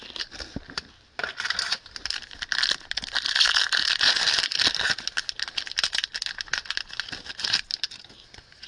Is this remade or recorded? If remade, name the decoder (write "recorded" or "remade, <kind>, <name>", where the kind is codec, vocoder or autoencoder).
recorded